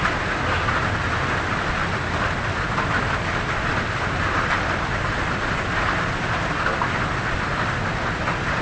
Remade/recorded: recorded